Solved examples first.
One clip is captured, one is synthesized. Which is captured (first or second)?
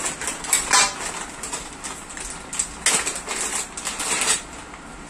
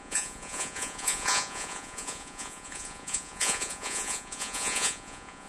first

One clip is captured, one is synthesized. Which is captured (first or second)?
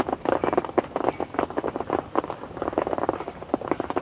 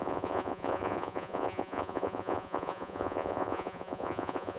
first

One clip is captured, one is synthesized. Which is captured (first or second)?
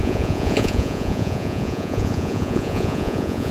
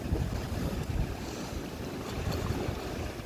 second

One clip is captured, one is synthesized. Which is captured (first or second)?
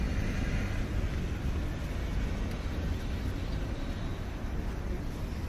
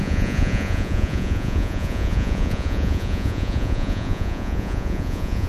first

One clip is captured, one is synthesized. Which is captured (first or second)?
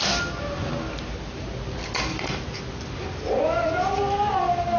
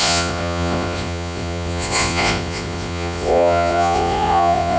first